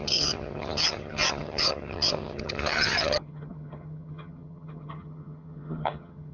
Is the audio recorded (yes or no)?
no